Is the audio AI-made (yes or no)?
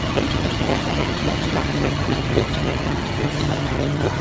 yes